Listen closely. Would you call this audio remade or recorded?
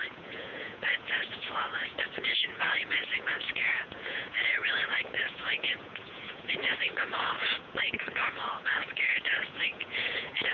remade